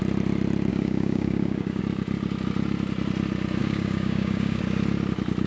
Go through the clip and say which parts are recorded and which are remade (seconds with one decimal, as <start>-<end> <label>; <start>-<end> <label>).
0.0-0.7 recorded; 0.7-1.8 remade; 1.8-3.6 recorded; 3.6-4.6 remade; 4.6-5.5 recorded